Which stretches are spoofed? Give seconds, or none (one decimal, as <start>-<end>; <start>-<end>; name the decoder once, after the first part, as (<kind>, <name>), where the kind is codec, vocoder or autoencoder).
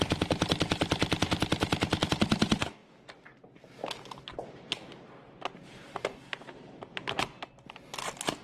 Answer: none